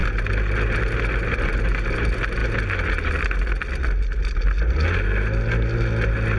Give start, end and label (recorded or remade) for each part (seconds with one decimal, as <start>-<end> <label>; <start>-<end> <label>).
0.0-6.4 recorded